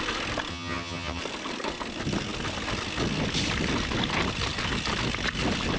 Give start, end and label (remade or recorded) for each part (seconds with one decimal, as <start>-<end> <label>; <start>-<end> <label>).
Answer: 0.0-0.5 recorded; 0.5-1.2 remade; 1.2-5.8 recorded

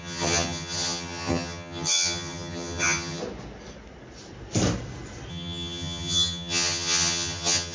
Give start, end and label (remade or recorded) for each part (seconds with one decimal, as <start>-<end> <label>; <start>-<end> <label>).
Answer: 0.0-3.2 remade; 3.2-5.3 recorded; 5.3-7.7 remade

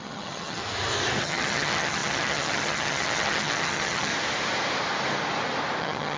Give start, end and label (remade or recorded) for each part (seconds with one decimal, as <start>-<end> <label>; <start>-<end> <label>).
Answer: 0.0-0.6 remade; 0.6-1.2 recorded; 1.2-4.1 remade; 4.1-5.8 recorded; 5.8-6.2 remade

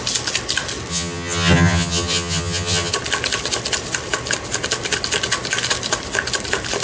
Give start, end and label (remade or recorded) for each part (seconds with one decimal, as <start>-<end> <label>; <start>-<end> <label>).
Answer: 0.0-0.9 recorded; 0.9-2.9 remade; 2.9-6.8 recorded

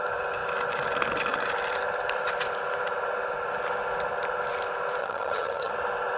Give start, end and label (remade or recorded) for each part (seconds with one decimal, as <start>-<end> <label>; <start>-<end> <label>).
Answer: 0.0-5.0 recorded; 5.0-5.7 remade; 5.7-6.2 recorded

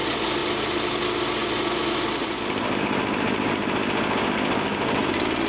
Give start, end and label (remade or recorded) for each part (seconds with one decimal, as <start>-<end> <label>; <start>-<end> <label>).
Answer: 0.0-5.5 recorded

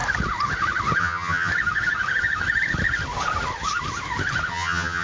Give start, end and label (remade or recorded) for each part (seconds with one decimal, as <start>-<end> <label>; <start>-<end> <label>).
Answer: 0.0-1.0 recorded; 1.0-1.5 remade; 1.5-4.5 recorded; 4.5-5.0 remade